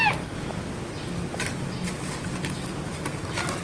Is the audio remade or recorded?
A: recorded